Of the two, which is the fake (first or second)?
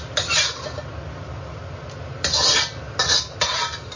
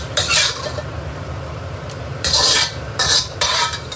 second